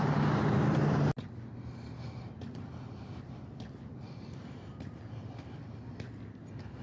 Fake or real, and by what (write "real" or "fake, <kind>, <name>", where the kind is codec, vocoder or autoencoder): real